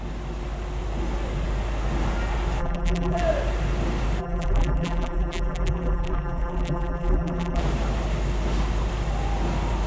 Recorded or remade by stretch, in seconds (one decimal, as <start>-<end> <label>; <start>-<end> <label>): 0.0-2.6 recorded; 2.6-3.2 remade; 3.2-4.2 recorded; 4.2-7.6 remade; 7.6-9.9 recorded